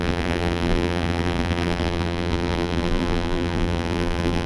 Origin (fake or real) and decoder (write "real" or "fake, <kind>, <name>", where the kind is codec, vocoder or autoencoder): fake, vocoder, BigVGAN v2